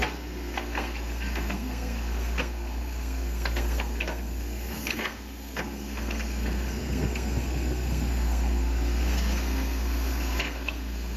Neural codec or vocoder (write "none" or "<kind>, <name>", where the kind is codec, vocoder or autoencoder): codec, SNAC